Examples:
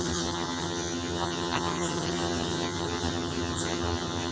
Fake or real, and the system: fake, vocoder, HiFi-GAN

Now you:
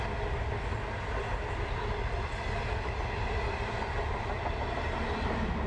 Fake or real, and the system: real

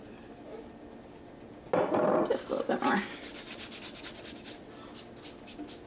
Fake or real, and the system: real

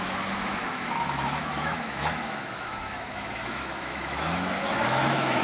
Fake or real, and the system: fake, autoencoder, DAC-VAE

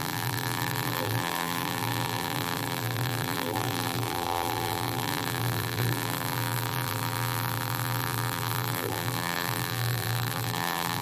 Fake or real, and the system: fake, vocoder, BigVGAN v2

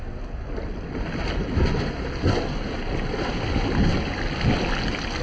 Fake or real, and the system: real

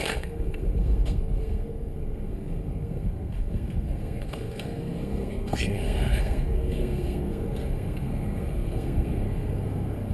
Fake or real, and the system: fake, codec, SNAC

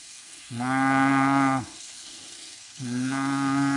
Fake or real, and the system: fake, codec, SNAC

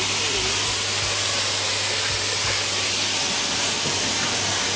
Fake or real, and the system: real